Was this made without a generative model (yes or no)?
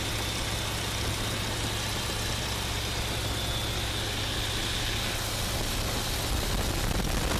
yes